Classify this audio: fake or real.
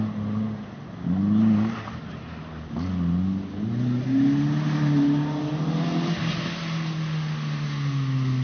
real